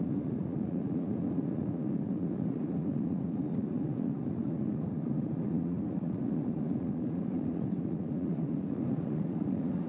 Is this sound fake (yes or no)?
yes